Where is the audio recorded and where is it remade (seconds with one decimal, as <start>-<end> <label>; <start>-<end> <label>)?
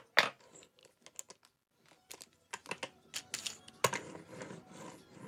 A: 0.0-5.3 recorded